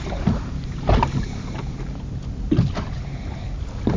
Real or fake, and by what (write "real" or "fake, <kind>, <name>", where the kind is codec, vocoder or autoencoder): real